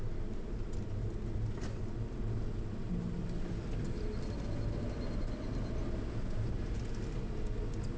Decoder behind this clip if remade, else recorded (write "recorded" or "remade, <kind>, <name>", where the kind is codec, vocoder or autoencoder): recorded